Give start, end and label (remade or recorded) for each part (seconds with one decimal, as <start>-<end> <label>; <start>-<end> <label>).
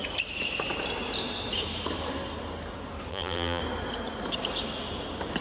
0.0-3.1 recorded; 3.1-3.6 remade; 3.6-5.4 recorded